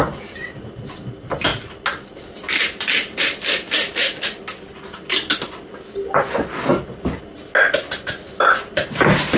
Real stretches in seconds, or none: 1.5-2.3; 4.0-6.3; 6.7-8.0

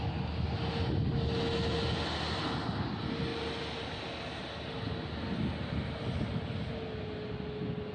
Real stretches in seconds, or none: 0.0-7.9

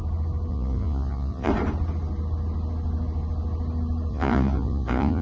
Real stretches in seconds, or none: 0.0-0.5; 1.5-4.1

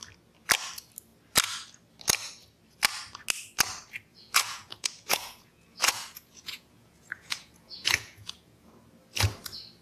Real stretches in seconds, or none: 0.0-4.1; 8.7-9.8

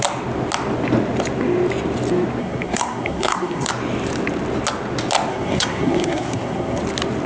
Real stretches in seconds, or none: 0.0-2.4; 3.7-5.3; 6.8-7.3

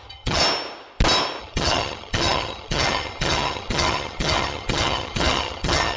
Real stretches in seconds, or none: 0.4-1.4

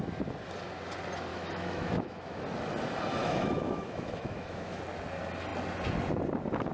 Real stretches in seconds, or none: 0.0-1.3; 2.4-3.2; 4.8-6.7